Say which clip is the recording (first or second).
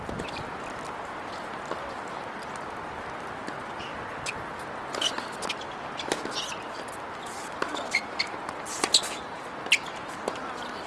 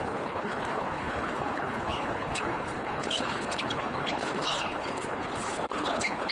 first